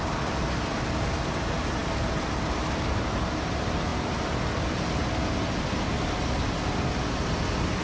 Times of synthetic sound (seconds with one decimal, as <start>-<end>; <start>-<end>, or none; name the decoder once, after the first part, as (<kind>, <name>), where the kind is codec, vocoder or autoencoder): none